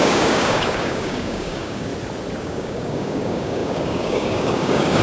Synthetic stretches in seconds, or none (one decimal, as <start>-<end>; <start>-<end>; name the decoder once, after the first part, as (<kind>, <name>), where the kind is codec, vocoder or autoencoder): 0.0-1.9 (codec, DAC); 2.4-5.0